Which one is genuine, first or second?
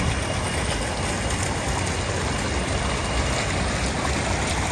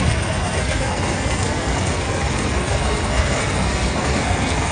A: first